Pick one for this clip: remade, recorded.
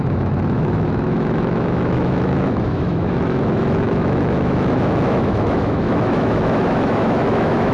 remade